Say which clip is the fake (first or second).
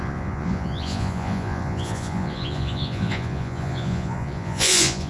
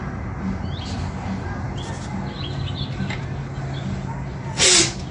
first